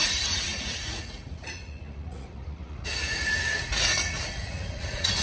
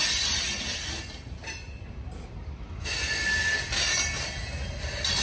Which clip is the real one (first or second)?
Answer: second